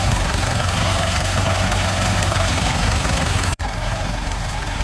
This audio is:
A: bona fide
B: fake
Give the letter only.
B